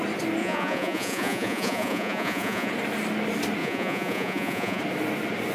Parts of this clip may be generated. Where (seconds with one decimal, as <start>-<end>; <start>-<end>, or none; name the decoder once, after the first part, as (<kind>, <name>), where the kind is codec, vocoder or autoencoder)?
0.4-2.7 (vocoder, Vocos); 3.6-4.8